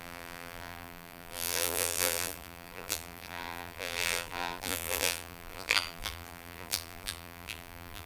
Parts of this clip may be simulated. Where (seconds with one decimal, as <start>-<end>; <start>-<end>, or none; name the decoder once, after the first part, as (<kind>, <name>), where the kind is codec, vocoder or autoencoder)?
0.0-8.1 (vocoder, BigVGAN v2)